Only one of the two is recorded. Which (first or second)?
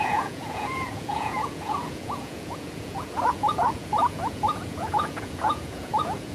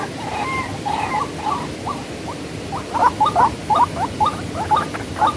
second